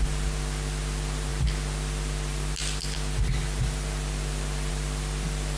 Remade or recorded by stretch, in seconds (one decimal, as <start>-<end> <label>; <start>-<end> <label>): 0.0-5.6 recorded